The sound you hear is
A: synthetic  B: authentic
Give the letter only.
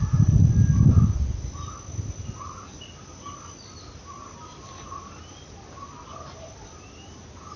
B